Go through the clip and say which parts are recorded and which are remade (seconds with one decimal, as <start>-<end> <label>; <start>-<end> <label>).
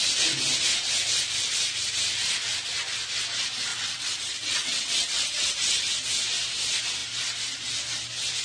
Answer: 0.0-3.7 recorded; 3.7-5.9 remade; 5.9-8.4 recorded